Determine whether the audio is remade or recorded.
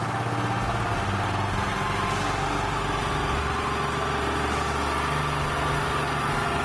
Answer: recorded